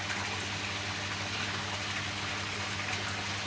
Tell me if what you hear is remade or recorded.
recorded